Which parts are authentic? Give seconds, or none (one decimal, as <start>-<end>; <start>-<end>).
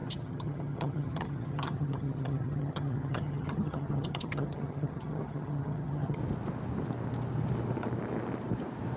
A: 6.2-9.0